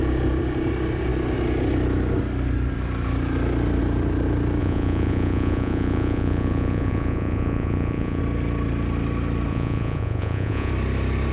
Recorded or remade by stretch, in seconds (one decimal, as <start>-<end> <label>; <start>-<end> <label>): 0.0-4.6 recorded; 4.6-8.2 remade; 8.2-9.5 recorded; 9.5-10.7 remade; 10.7-11.3 recorded